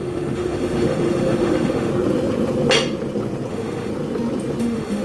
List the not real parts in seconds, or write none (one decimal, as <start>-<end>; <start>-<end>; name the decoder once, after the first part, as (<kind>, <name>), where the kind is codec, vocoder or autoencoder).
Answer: 0.0-1.9 (autoencoder, DAC-VAE); 3.5-3.9; 4.6-5.0

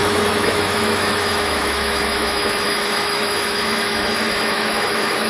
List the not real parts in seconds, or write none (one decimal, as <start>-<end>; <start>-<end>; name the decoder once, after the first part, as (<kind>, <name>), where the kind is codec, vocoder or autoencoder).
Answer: 0.0-5.3 (autoencoder, DAC-VAE)

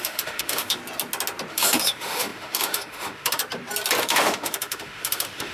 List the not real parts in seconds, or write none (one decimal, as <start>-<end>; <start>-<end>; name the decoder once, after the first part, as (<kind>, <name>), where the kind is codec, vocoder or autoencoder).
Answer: 0.0-0.8 (autoencoder, DAC-VAE); 1.5-3.4; 4.0-5.5

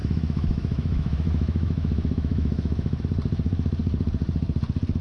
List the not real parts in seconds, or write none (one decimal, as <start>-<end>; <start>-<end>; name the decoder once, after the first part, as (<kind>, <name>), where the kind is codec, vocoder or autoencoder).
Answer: 0.0-3.0 (autoencoder, DAC-VAE)

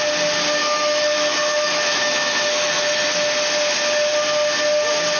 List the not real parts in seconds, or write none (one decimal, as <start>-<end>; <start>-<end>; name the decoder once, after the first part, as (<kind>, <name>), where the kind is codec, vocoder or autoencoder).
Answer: 0.6-3.1 (autoencoder, DAC-VAE)

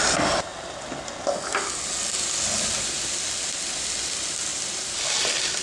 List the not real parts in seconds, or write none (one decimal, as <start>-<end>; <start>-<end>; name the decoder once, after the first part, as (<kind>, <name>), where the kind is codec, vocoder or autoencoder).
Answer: none